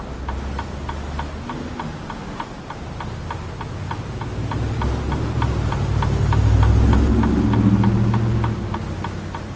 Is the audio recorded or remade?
recorded